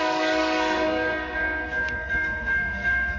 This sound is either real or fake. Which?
fake